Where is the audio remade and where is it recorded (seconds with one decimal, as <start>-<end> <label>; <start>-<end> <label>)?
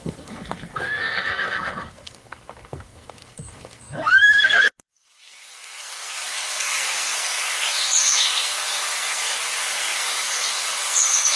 0.0-11.4 remade